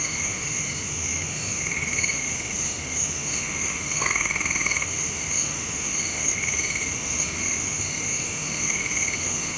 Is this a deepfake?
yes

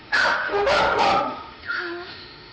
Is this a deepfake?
yes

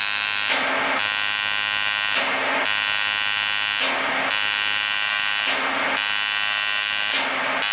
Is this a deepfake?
no